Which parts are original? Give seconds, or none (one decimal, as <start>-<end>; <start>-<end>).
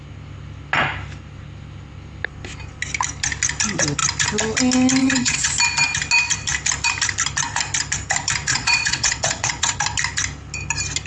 0.0-5.0; 5.5-8.5; 9.8-11.1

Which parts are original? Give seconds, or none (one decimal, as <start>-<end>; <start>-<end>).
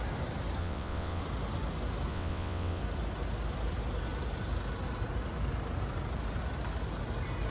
0.0-0.6; 1.2-2.1; 2.8-7.5